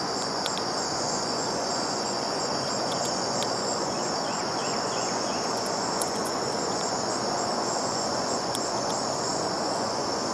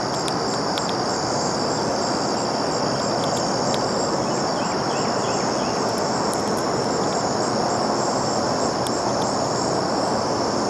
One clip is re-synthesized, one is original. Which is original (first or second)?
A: second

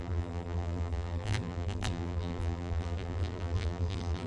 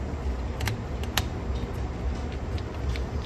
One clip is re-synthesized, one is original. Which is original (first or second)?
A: second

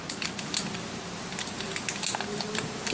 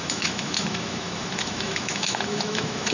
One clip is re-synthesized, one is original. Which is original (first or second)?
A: first